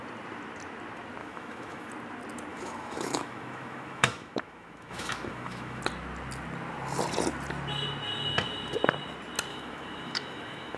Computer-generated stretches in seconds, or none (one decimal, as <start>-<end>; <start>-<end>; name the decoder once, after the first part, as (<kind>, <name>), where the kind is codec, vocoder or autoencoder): 1.2-1.9 (autoencoder, DAC-VAE); 2.5-5.8; 9.5-10.8